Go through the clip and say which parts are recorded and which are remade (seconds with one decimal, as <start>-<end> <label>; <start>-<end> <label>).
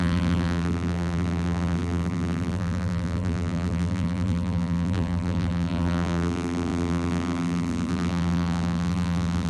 0.0-9.5 remade